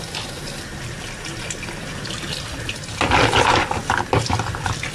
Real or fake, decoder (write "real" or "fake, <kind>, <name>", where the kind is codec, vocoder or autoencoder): real